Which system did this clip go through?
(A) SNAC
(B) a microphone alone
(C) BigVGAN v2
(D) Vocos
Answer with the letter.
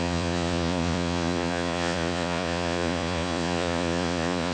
D